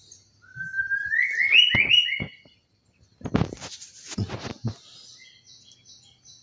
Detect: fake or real real